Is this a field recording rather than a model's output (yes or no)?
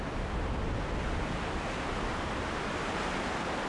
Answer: yes